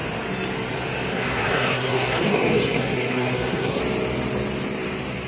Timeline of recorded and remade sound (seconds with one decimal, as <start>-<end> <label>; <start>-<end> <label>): 0.0-1.1 recorded; 1.1-3.8 remade; 3.8-5.3 recorded